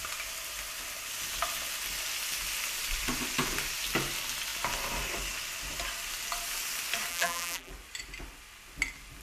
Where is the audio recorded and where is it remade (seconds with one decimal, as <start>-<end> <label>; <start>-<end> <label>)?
0.0-7.1 recorded; 7.1-7.7 remade; 7.7-9.2 recorded